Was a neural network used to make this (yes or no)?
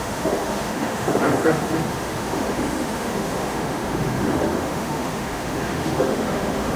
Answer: yes